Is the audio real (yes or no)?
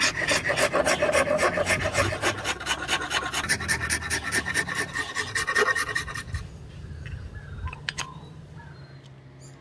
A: yes